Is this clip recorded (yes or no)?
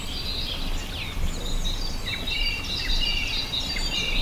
yes